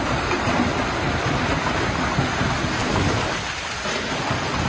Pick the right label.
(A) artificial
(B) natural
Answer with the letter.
B